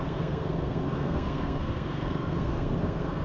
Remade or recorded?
remade